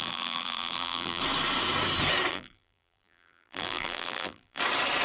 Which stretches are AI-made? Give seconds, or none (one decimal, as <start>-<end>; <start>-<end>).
0.0-1.2; 2.3-4.6